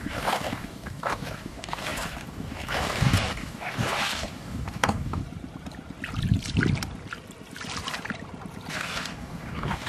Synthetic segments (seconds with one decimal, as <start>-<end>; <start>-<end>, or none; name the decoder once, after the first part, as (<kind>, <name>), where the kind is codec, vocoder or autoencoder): 0.0-5.2 (codec, DAC); 8.7-9.9